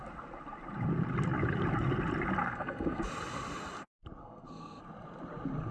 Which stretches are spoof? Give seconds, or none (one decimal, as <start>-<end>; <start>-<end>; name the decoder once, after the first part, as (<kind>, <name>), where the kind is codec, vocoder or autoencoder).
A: 2.4-3.0 (codec, SNAC); 4.2-4.8